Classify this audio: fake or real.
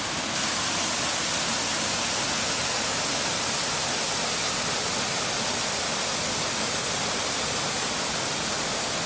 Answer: real